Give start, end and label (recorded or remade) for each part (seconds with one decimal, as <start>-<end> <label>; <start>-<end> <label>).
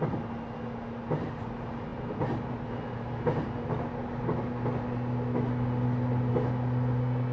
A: 0.0-7.3 recorded